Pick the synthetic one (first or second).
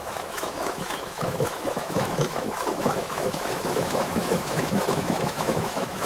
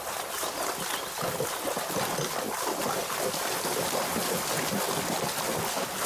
first